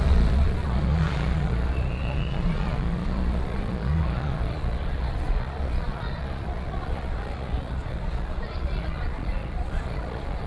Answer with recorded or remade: remade